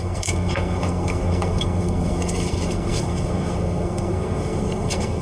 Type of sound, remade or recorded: remade